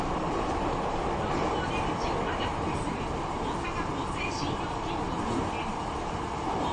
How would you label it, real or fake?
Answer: real